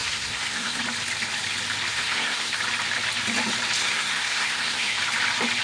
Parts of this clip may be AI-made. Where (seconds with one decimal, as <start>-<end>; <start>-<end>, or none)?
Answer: 0.0-0.8; 1.9-2.6; 3.8-5.0